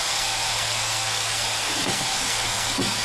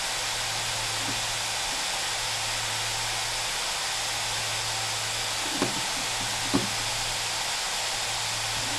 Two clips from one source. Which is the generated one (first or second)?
first